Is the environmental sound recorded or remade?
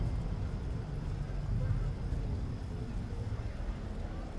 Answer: recorded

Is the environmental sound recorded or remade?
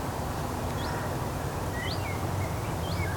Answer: recorded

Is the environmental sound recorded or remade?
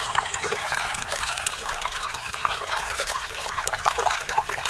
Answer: remade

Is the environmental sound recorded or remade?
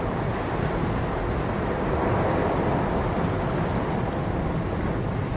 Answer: recorded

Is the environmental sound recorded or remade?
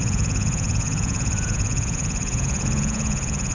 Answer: remade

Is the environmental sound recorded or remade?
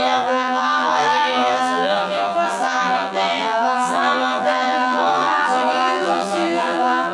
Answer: remade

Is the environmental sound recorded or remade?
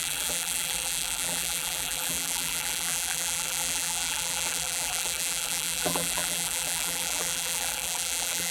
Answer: remade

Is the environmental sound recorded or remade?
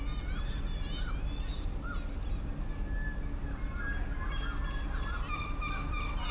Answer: recorded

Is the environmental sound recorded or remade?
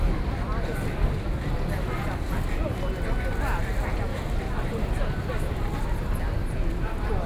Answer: recorded